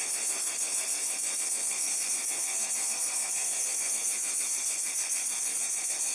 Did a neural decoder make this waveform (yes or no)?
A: yes